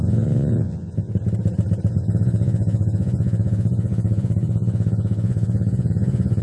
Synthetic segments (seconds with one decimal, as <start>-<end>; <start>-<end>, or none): 0.0-1.1; 1.9-6.4